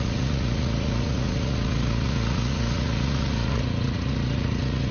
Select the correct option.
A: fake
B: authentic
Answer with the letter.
A